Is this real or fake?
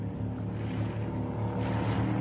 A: real